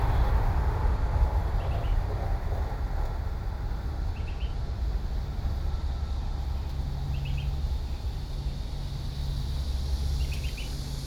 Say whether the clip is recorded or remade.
recorded